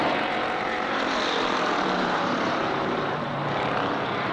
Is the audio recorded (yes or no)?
no